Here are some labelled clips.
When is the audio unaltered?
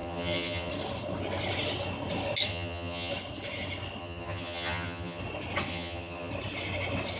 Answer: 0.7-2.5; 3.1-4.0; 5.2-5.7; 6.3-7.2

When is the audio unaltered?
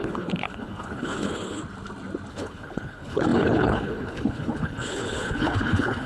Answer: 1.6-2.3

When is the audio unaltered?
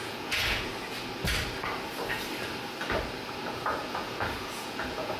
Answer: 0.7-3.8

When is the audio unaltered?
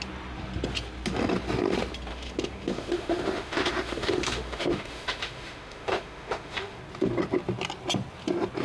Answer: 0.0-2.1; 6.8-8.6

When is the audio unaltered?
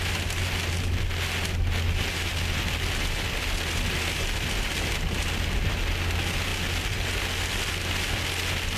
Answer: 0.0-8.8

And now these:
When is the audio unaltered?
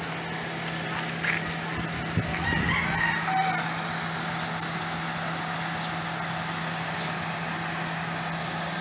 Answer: 0.0-8.8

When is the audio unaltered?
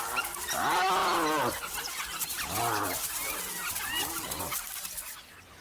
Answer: 0.0-5.6